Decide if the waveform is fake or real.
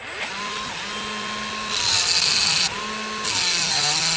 real